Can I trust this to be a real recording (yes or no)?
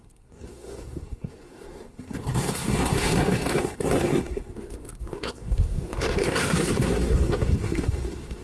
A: no